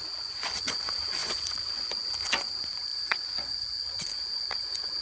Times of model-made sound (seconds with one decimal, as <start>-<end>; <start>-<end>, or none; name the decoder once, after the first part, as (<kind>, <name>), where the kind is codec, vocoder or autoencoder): 0.0-5.0 (vocoder, Vocos)